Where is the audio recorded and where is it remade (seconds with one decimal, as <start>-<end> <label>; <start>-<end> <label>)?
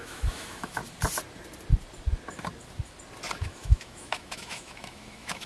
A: 0.0-0.8 remade; 0.8-3.4 recorded; 3.4-5.5 remade